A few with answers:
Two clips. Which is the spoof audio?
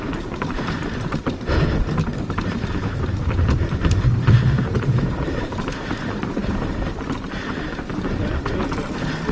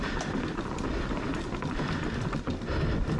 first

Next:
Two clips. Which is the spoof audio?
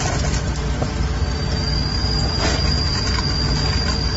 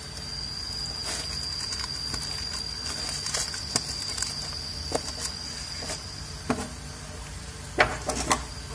first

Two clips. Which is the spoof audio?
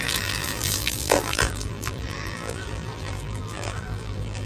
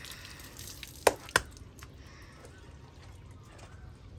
first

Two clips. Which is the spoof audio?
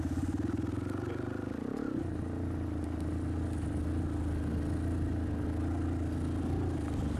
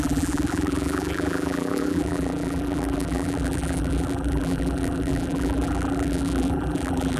second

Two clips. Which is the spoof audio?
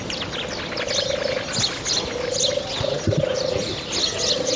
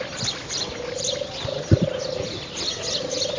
second